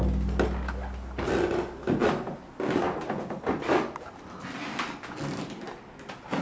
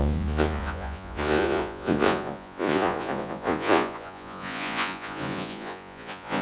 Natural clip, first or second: first